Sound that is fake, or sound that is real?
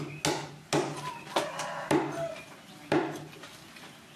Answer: real